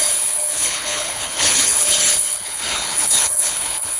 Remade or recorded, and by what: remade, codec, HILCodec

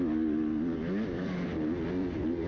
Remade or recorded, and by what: recorded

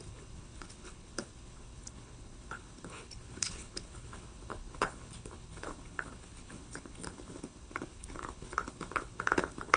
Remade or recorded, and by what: remade, codec, HILCodec